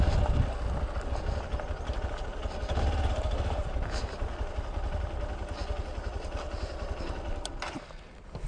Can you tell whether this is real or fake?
real